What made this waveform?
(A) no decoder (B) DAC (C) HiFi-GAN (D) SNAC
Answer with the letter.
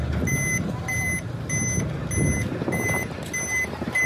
A